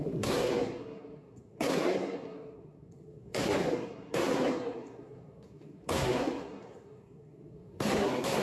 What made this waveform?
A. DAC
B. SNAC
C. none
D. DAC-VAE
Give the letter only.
B